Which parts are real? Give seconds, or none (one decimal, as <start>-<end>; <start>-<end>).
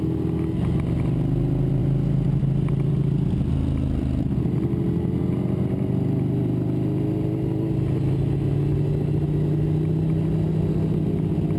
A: 0.0-11.6